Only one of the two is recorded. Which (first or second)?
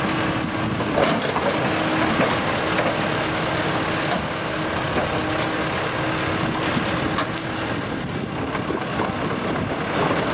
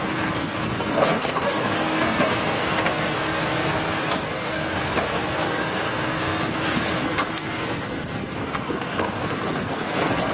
first